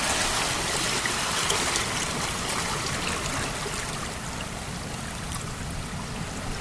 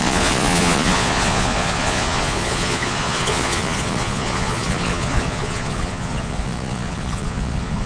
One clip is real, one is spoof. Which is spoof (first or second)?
second